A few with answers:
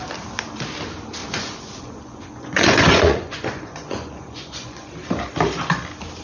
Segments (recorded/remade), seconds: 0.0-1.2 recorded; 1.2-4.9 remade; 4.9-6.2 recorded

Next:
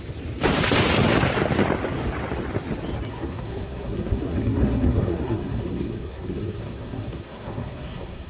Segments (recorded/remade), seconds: 0.0-3.1 recorded; 3.1-8.3 remade

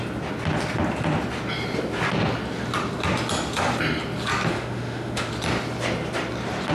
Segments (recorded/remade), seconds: 0.0-4.5 recorded; 4.5-5.3 remade; 5.3-6.7 recorded

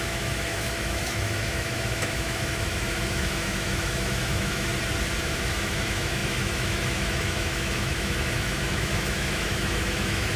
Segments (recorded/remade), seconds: 0.0-4.7 remade; 4.7-5.2 recorded; 5.2-10.4 remade

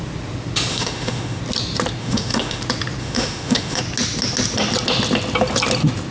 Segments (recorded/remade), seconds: 0.0-0.7 recorded; 0.7-1.4 remade; 1.4-2.0 recorded; 2.0-2.6 remade; 2.6-3.0 recorded; 3.0-3.8 remade; 3.8-6.1 recorded

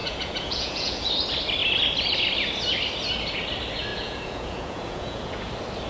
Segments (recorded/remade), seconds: 0.0-1.1 remade; 1.1-3.9 recorded; 3.9-5.5 remade; 5.5-5.9 recorded